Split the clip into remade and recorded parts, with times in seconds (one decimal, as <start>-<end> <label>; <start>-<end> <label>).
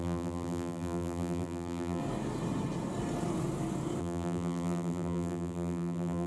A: 0.0-2.0 remade; 2.0-4.0 recorded; 4.0-6.3 remade